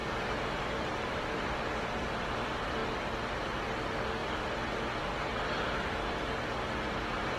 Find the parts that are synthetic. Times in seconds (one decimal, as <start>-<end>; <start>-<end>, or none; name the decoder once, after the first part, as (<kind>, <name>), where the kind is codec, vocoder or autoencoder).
0.0-1.8 (vocoder, BigVGAN v2)